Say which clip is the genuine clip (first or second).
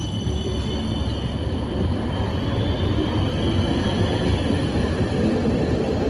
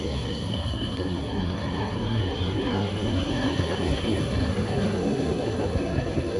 first